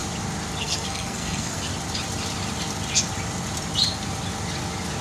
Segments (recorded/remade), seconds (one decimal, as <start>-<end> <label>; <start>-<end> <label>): 0.0-0.6 recorded; 0.6-1.7 remade; 1.7-5.0 recorded